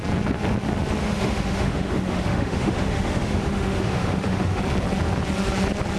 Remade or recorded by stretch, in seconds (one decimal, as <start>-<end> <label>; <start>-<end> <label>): 0.0-1.0 recorded; 1.0-4.6 remade; 4.6-6.0 recorded